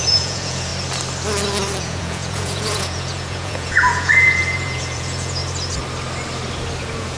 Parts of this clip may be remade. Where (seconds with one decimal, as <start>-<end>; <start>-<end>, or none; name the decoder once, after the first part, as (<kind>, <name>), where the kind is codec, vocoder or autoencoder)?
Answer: 0.0-0.7 (vocoder, Vocos); 1.8-5.4; 6.8-7.2